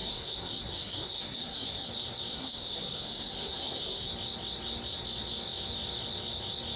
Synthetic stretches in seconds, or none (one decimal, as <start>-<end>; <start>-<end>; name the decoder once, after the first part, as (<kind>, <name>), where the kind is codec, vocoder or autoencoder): 0.0-1.9 (codec, SNAC); 2.3-4.1